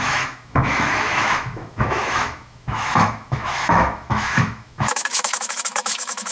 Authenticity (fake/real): fake